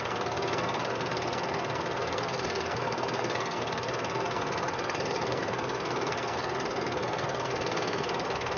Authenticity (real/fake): fake